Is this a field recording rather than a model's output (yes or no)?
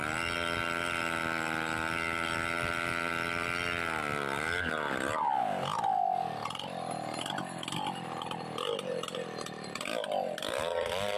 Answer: yes